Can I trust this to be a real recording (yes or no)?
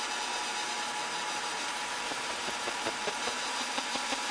no